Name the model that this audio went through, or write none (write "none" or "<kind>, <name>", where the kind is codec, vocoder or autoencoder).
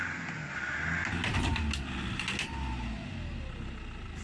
none